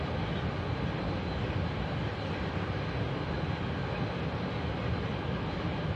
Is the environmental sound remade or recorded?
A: recorded